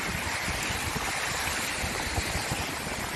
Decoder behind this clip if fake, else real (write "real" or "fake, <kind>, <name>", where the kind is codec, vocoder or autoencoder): real